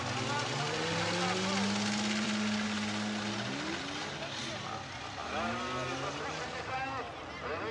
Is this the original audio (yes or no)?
yes